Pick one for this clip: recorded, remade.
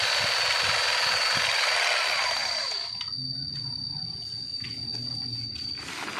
recorded